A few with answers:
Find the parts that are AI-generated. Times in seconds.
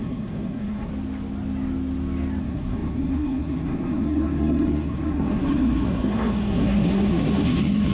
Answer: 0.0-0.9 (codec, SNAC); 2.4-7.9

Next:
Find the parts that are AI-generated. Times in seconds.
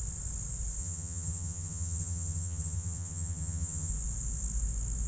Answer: 0.8-3.9 (vocoder, HiFi-GAN)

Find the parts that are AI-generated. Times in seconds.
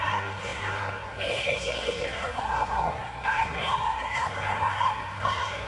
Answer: 0.0-5.7 (codec, SNAC)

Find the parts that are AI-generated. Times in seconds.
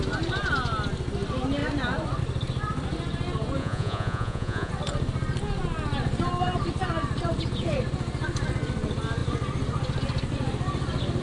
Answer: 3.6-4.7 (vocoder, Vocos)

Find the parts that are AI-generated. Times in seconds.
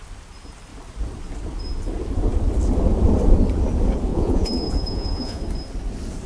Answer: 4.1-5.4 (vocoder, Vocos)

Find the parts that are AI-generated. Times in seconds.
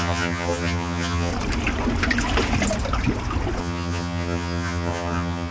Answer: 0.0-1.3 (vocoder, HiFi-GAN); 3.6-5.5